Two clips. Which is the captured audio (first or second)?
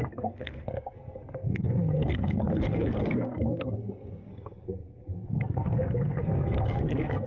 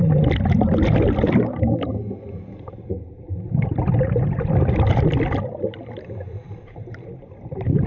second